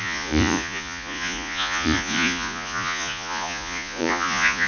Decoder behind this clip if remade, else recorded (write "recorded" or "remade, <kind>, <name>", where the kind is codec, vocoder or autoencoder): remade, vocoder, Vocos